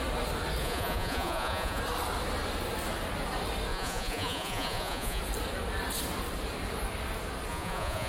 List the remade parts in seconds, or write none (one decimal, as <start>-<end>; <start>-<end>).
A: 0.6-1.8; 3.7-5.2; 7.5-8.1